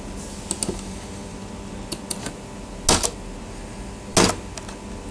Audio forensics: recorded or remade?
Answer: recorded